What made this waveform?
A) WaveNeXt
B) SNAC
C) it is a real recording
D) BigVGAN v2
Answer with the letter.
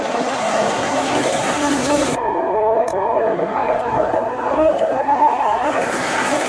B